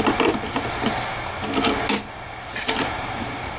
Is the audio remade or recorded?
recorded